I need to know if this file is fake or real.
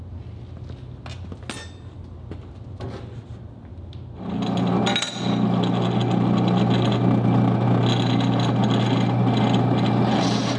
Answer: real